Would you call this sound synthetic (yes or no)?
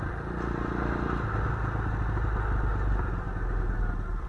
no